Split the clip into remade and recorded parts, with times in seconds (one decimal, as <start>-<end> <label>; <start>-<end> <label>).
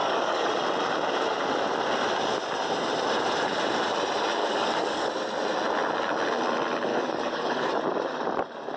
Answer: 0.0-0.5 remade; 0.5-4.4 recorded; 4.4-5.1 remade; 5.1-6.9 recorded; 6.9-7.8 remade; 7.8-8.8 recorded